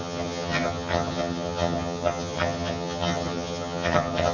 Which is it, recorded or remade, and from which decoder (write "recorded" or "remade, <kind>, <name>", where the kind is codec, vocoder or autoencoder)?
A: remade, vocoder, HiFi-GAN